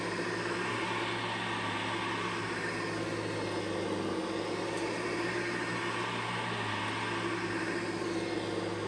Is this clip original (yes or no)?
yes